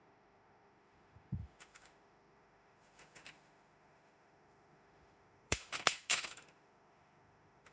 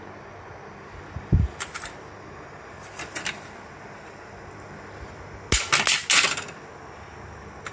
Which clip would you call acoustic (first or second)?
second